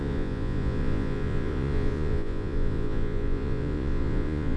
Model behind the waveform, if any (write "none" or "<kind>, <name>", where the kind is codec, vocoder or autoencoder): vocoder, Vocos